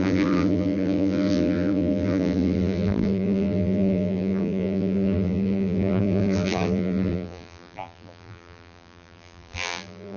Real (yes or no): no